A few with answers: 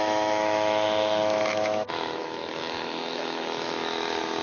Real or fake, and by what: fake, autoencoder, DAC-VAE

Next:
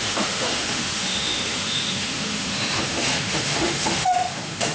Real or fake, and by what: fake, autoencoder, DAC-VAE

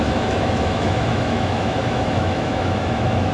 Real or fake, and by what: fake, autoencoder, DAC-VAE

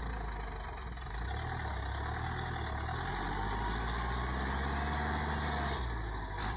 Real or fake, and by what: real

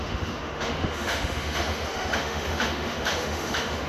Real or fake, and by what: fake, autoencoder, DAC-VAE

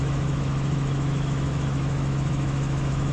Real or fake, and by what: fake, autoencoder, DAC-VAE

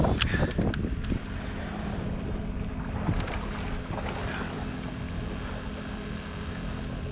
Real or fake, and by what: real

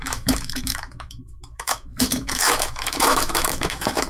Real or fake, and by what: fake, autoencoder, DAC-VAE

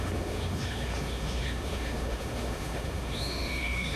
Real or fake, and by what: fake, autoencoder, DAC-VAE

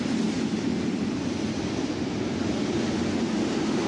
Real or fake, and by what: real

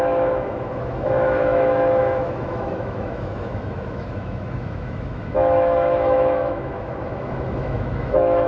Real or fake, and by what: fake, autoencoder, DAC-VAE